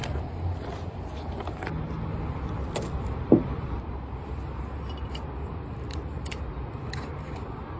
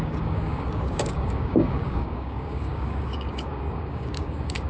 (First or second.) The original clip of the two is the first